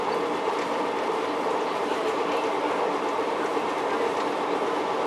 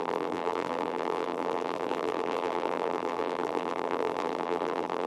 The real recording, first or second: first